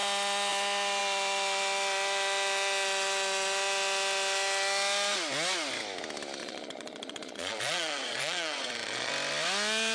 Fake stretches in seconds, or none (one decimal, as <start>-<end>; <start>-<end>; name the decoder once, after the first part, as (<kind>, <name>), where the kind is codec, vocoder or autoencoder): 6.4-9.1 (vocoder, Vocos)